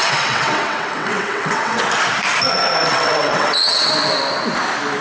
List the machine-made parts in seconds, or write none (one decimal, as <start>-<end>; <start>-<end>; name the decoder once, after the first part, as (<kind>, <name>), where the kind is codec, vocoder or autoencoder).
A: 0.0-1.8 (vocoder, WaveNeXt); 2.9-3.9